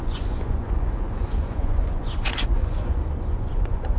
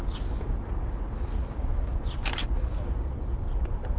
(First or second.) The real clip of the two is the second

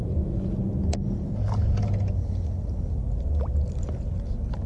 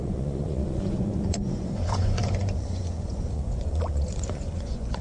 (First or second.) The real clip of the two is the first